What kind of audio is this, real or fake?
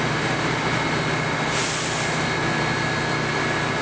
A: real